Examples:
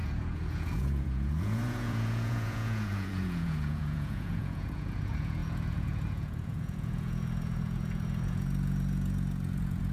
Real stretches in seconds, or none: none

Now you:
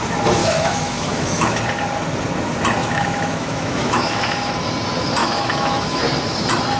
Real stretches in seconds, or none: 0.0-0.4; 1.6-2.8; 4.5-5.2; 6.0-6.8

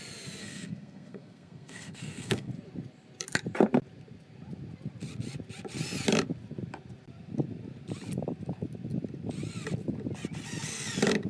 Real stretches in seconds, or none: 0.0-0.4; 2.5-11.3

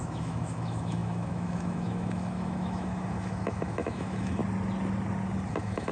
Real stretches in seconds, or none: 4.4-5.5

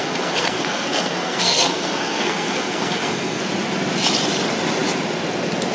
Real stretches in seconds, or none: 3.4-5.7

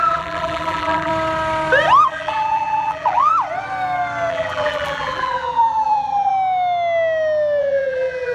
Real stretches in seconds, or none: 1.1-2.1; 3.3-4.3; 6.3-7.6